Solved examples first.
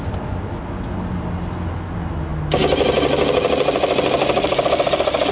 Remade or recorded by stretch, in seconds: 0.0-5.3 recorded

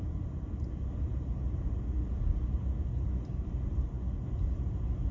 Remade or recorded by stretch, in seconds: 0.0-5.1 recorded

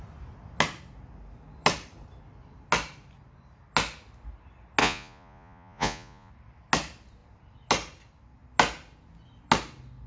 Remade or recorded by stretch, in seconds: 0.0-4.8 recorded; 4.8-6.3 remade; 6.3-10.1 recorded